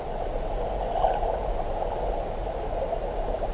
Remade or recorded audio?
recorded